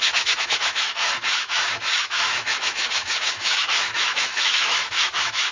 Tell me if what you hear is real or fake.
fake